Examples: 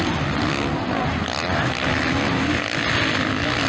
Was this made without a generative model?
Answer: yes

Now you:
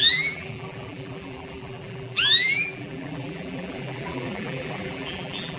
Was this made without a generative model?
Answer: no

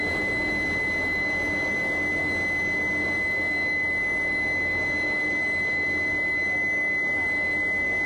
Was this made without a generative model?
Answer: yes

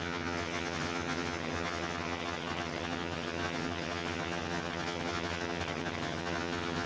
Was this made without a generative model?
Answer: no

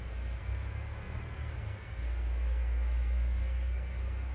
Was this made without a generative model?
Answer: no